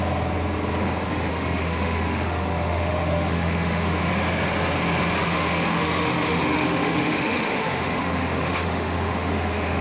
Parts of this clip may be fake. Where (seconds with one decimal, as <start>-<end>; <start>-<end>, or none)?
1.3-4.1; 5.3-9.8